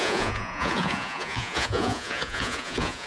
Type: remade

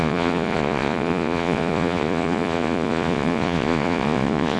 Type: remade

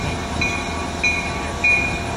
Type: recorded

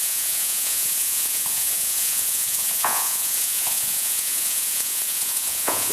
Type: remade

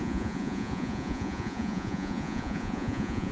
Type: remade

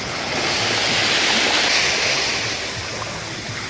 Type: recorded